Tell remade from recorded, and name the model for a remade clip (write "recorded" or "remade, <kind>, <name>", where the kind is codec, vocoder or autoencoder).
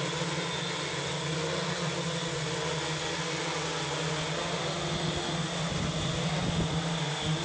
recorded